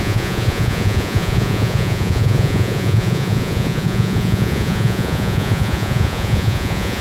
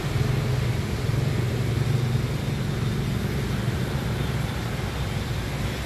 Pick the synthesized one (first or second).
first